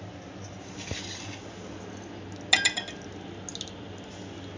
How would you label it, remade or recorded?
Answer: recorded